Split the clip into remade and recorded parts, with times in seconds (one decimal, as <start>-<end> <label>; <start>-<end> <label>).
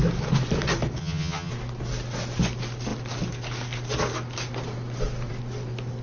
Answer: 0.0-1.0 recorded; 1.0-1.5 remade; 1.5-6.0 recorded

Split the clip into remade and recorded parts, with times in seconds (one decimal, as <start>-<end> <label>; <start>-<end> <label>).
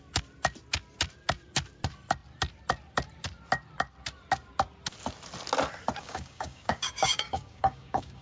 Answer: 0.0-6.0 recorded; 6.0-8.2 remade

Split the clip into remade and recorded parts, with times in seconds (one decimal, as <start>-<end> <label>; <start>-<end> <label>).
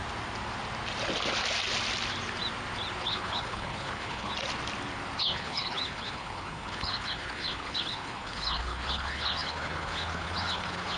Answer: 0.0-3.0 recorded; 3.0-4.3 remade; 4.3-5.2 recorded; 5.2-11.0 remade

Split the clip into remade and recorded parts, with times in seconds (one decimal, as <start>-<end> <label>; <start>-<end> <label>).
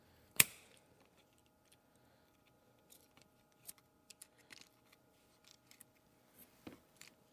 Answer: 0.0-4.1 remade; 4.1-4.7 recorded; 4.7-7.3 remade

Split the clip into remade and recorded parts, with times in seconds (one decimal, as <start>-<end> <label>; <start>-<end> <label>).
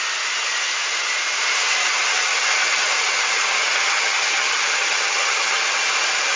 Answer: 0.0-1.8 recorded; 1.8-5.6 remade; 5.6-6.4 recorded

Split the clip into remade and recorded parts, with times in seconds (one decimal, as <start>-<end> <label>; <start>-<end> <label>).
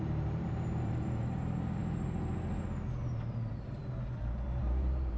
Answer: 0.0-1.8 remade; 1.8-3.0 recorded; 3.0-3.8 remade; 3.8-4.6 recorded; 4.6-5.2 remade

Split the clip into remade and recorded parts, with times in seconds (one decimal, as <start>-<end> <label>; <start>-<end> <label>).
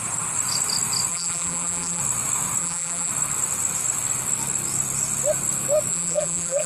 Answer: 0.0-1.1 recorded; 1.1-2.0 remade; 2.0-2.6 recorded; 2.6-3.1 remade; 3.1-5.9 recorded; 5.9-6.7 remade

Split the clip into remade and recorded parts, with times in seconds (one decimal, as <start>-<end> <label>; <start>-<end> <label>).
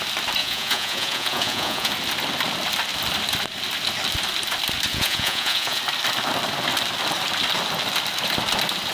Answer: 0.0-0.4 recorded; 0.4-1.9 remade; 1.9-4.9 recorded; 4.9-5.8 remade; 5.8-8.9 recorded